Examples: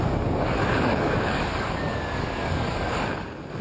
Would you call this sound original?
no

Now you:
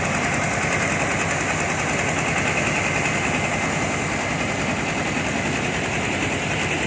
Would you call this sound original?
yes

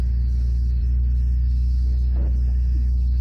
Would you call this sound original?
yes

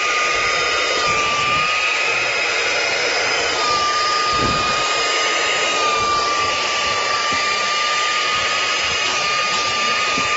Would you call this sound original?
yes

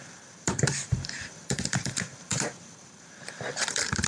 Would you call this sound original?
no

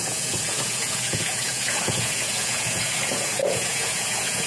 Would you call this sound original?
no